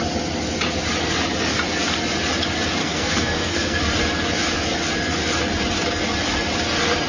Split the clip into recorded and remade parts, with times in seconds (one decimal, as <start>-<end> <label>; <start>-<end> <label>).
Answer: 0.0-2.8 recorded; 2.8-3.8 remade; 3.8-7.1 recorded